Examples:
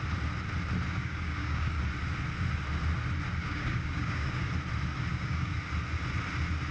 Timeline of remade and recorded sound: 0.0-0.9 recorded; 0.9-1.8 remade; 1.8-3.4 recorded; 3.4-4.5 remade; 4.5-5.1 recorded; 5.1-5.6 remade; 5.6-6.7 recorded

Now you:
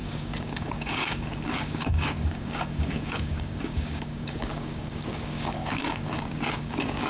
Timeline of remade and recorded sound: 0.0-7.1 remade